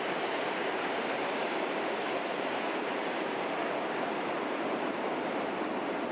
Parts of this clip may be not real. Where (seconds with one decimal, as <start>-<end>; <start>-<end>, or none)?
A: 0.0-6.1